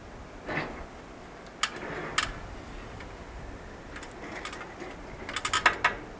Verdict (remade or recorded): recorded